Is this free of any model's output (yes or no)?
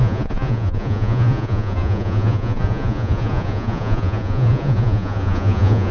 no